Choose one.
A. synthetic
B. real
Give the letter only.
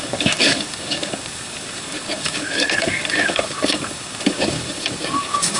A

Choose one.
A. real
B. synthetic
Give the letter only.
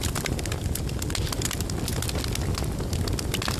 A